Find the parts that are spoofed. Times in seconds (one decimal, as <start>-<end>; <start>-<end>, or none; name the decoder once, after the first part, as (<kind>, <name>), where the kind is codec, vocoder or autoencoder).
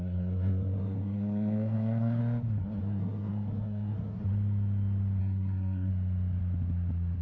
0.0-2.2 (codec, SNAC); 2.8-4.2; 5.2-5.9